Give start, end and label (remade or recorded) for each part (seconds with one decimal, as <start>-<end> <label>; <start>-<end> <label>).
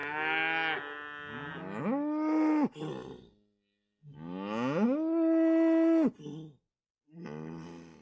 0.0-8.0 recorded